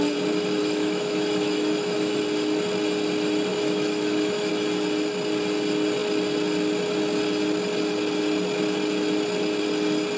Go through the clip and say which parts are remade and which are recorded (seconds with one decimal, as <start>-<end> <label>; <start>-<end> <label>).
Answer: 0.0-0.6 recorded; 0.6-2.2 remade; 2.2-3.5 recorded; 3.5-4.5 remade; 4.5-10.2 recorded